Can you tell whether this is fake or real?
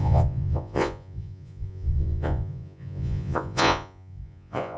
fake